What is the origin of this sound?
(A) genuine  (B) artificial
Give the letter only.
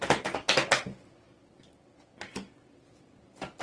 A